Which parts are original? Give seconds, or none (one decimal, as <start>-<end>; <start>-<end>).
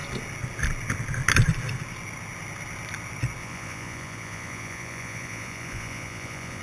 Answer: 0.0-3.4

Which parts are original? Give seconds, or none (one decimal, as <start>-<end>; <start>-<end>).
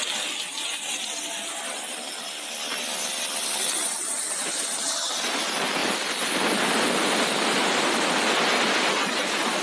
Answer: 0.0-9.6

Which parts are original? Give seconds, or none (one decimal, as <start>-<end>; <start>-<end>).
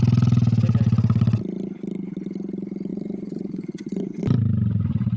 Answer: 0.0-2.9; 4.2-5.2